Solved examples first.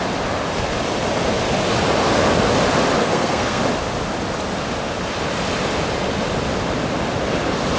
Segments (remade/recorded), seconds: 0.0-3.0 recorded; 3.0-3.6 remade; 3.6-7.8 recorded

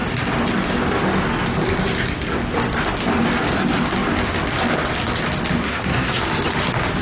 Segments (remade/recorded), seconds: 0.0-5.6 recorded; 5.6-6.2 remade; 6.2-7.0 recorded